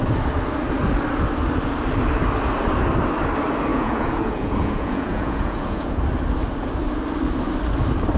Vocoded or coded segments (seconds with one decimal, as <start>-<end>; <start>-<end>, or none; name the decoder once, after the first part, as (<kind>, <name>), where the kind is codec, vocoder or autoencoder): 3.7-6.0 (vocoder, Vocos)